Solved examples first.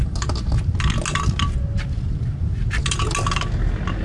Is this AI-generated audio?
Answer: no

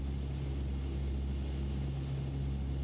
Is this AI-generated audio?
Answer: no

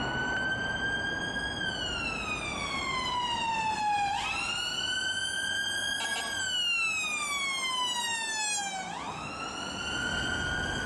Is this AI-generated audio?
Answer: no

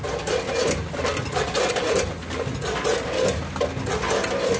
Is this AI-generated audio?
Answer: no